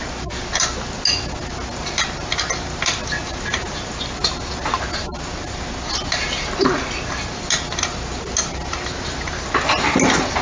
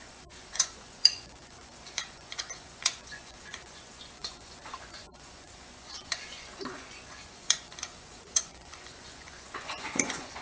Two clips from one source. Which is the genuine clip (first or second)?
first